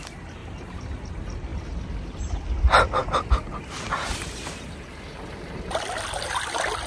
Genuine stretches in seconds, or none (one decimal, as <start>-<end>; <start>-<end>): none